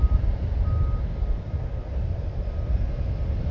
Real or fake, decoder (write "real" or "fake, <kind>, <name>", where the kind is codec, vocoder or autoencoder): real